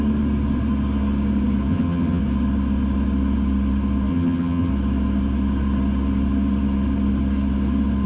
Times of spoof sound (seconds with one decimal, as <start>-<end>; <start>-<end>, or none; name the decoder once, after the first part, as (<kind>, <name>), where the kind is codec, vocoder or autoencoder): 1.7-2.2 (vocoder, HiFi-GAN); 4.1-4.7